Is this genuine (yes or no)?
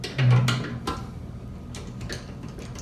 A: yes